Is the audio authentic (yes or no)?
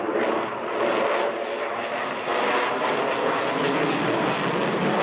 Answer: yes